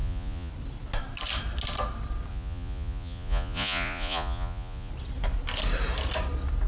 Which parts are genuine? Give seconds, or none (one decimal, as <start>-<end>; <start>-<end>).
0.5-2.3; 4.9-6.7